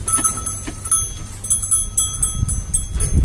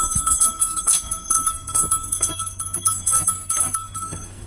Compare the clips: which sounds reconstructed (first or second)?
second